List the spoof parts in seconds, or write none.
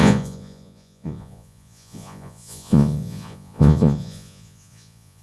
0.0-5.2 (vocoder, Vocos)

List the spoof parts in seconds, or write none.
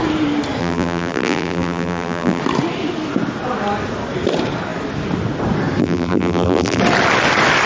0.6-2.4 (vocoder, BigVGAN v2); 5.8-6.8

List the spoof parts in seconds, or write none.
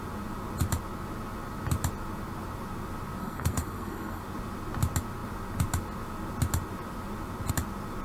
3.2-4.2 (codec, SNAC)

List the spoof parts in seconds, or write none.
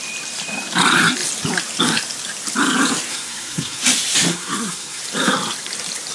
3.1-3.8 (codec, SNAC); 4.3-5.0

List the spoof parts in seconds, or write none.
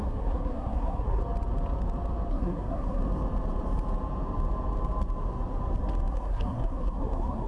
0.0-1.2 (codec, SNAC); 2.3-3.0; 6.1-7.5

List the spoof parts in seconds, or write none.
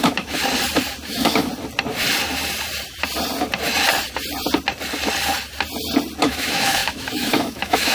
0.0-0.4 (autoencoder, DAC-VAE); 1.1-1.5; 6.2-7.9